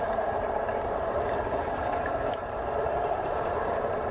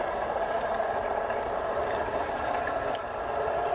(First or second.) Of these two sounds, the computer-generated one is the first